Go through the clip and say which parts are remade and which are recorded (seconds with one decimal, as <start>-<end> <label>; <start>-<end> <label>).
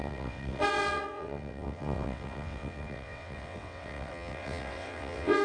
0.0-5.4 remade